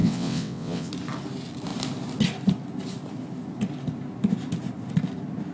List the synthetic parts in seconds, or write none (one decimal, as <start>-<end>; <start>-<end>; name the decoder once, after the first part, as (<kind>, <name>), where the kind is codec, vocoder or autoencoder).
0.0-0.9 (vocoder, WaveNeXt)